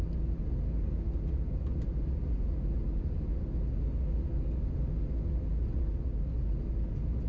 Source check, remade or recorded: recorded